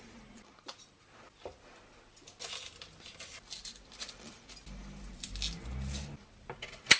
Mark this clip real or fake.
real